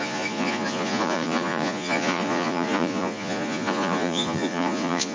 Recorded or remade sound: remade